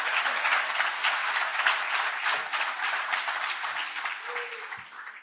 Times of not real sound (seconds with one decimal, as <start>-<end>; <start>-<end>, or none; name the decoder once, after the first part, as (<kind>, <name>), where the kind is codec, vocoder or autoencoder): 1.5-4.0 (vocoder, BigVGAN v2); 4.5-5.2